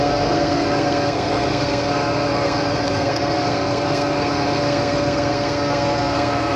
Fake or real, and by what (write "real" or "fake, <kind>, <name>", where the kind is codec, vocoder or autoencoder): fake, codec, SNAC